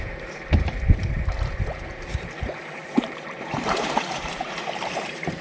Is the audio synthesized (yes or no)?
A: yes